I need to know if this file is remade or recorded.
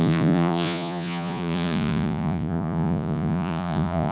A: remade